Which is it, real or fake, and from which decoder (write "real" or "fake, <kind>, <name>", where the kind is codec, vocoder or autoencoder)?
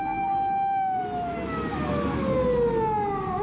real